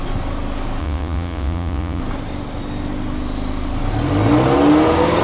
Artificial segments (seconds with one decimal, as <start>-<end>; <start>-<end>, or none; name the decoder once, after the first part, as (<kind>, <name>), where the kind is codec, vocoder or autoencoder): 0.8-2.0 (vocoder, Vocos)

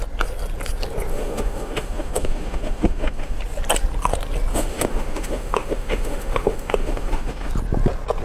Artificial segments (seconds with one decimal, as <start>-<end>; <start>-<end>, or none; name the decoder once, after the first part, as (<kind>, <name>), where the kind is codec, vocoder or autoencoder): 1.1-3.4 (autoencoder, DAC-VAE); 4.5-7.5

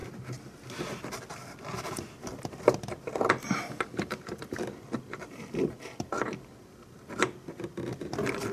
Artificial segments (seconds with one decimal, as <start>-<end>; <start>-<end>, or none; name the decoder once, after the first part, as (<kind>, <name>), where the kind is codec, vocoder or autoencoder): 1.4-6.5 (vocoder, BigVGAN v2)

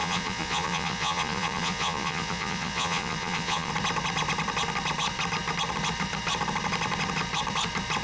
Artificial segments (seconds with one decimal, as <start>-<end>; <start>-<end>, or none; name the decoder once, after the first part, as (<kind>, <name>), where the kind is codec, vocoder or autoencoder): 0.0-3.7 (vocoder, Vocos)

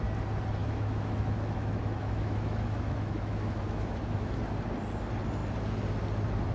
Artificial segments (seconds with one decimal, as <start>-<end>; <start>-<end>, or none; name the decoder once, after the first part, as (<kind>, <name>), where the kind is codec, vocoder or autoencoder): 0.6-4.4 (autoencoder, DAC-VAE)

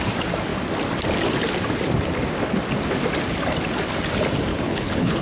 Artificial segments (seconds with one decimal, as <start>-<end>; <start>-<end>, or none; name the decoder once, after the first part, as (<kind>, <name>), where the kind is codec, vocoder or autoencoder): 4.5-5.2 (codec, HILCodec)